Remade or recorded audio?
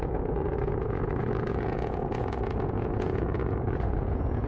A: remade